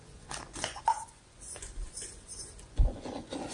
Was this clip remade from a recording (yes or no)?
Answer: yes